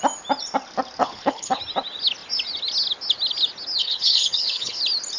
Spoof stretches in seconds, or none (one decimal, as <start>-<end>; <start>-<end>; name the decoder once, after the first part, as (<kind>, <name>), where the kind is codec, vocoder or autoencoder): 1.0-1.6 (codec, HILCodec); 3.8-4.8